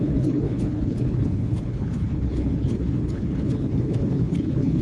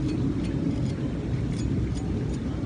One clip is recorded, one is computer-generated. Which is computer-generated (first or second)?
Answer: first